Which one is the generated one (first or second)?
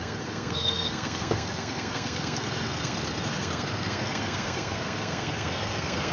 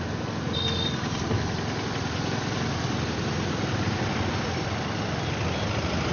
first